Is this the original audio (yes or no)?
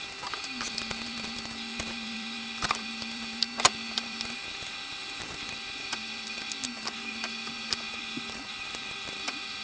no